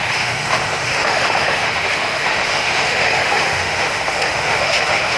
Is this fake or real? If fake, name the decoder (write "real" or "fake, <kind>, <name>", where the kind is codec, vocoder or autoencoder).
fake, autoencoder, DAC-VAE